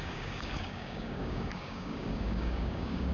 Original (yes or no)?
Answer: no